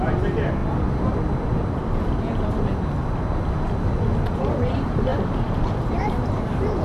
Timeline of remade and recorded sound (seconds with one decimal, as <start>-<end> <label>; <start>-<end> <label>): 0.0-0.6 remade; 0.6-4.4 recorded; 4.4-6.8 remade